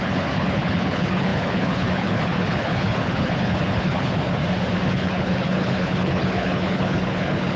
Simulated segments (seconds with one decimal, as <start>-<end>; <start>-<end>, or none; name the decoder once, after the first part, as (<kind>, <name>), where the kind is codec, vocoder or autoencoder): 0.0-4.4 (codec, HILCodec); 4.9-7.6